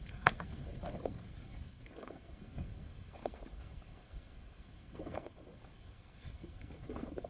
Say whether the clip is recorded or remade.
remade